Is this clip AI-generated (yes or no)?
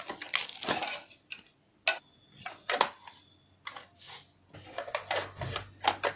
no